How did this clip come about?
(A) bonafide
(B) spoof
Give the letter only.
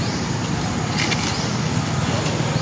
A